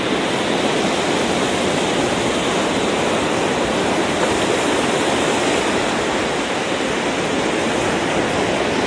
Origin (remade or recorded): recorded